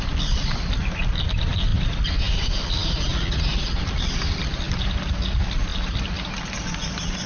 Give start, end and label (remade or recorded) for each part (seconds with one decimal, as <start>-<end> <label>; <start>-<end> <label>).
0.0-7.3 recorded